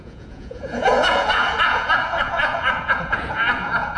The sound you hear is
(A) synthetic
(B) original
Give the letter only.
A